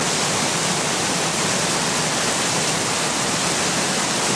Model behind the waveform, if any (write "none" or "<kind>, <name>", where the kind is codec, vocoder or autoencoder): none